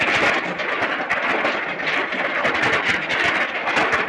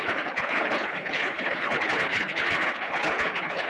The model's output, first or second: second